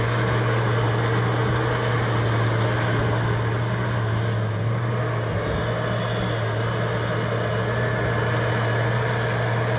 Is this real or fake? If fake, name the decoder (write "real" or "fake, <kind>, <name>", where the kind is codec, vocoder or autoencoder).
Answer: real